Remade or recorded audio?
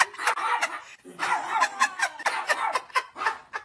recorded